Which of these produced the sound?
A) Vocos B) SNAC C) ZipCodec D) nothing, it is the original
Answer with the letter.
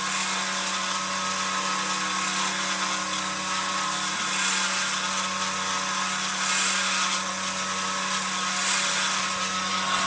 D